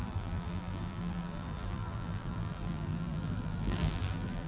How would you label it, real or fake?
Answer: fake